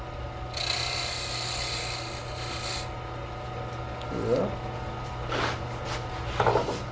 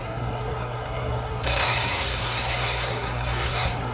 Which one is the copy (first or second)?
second